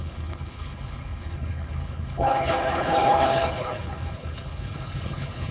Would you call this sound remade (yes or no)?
yes